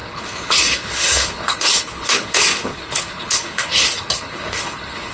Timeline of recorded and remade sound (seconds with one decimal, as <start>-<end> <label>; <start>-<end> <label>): 0.0-5.1 remade